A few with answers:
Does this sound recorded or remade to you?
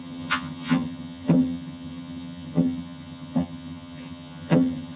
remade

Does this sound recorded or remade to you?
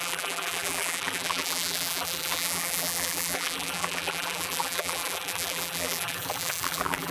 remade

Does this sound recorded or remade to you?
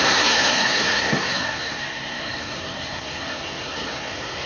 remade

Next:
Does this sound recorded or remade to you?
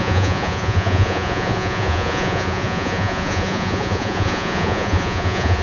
remade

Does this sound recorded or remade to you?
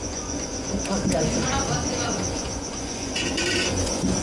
remade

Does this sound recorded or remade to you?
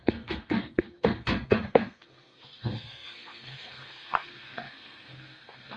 remade